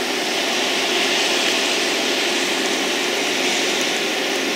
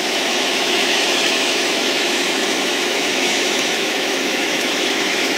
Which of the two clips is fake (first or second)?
second